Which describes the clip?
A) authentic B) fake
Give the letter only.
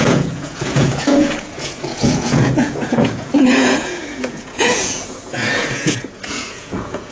B